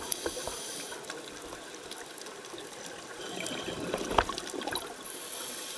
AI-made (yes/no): no